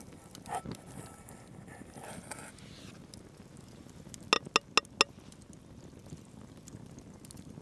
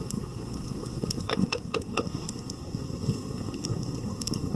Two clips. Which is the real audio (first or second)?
first